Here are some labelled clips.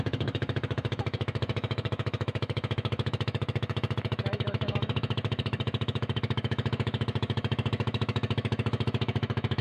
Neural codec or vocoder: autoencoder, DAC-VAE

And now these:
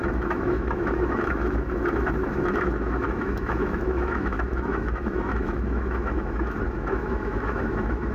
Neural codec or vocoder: autoencoder, DAC-VAE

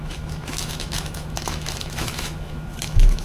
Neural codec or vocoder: autoencoder, DAC-VAE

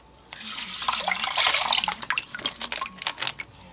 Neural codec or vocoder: none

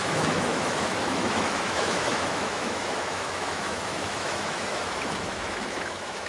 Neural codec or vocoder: autoencoder, DAC-VAE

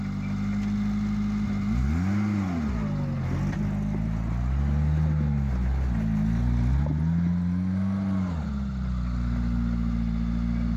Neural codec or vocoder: none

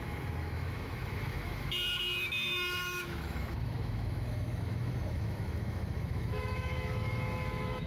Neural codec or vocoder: autoencoder, DAC-VAE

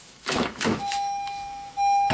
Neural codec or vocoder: autoencoder, DAC-VAE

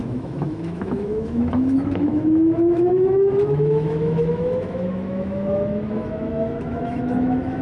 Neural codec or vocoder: autoencoder, DAC-VAE